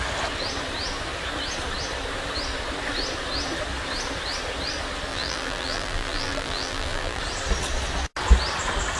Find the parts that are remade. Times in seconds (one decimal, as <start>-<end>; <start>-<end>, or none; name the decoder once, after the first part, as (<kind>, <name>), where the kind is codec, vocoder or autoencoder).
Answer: 5.1-7.2 (vocoder, BigVGAN v2)